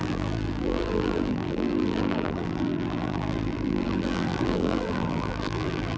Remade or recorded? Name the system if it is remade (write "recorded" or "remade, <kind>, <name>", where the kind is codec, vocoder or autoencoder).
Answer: remade, vocoder, BigVGAN v2